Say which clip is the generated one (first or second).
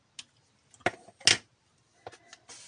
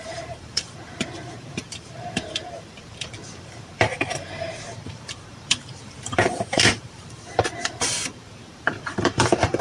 second